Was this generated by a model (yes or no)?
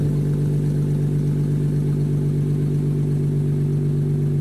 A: no